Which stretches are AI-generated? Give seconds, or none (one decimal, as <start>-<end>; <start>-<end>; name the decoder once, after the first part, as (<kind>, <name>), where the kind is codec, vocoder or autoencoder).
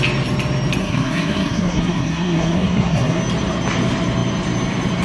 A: 0.8-3.2 (codec, SNAC)